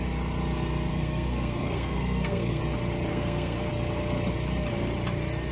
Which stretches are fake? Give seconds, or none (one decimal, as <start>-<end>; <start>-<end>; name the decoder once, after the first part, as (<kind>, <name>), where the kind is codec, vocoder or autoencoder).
0.9-2.6 (codec, SNAC); 3.1-3.7